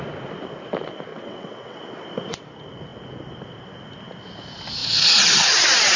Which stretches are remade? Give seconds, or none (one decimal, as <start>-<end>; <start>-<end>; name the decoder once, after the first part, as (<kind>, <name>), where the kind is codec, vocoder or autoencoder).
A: 1.1-1.8 (vocoder, WaveNeXt)